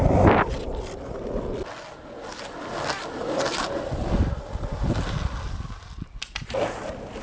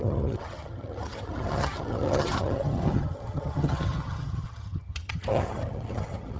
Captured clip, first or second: first